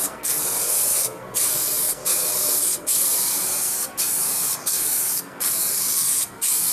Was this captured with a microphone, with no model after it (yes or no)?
no